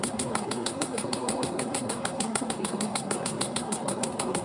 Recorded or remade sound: remade